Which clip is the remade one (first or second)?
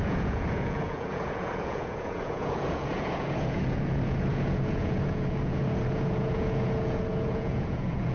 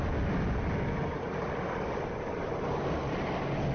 first